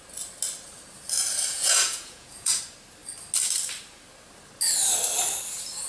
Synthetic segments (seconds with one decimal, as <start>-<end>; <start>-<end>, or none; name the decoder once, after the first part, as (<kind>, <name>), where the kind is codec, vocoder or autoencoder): 1.5-2.6 (vocoder, Vocos)